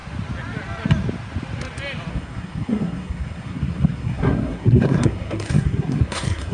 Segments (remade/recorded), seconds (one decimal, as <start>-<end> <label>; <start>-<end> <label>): 0.0-2.1 recorded; 2.1-6.5 remade